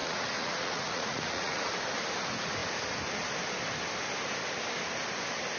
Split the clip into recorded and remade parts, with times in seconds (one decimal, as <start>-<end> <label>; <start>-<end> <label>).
0.0-1.7 remade; 1.7-5.6 recorded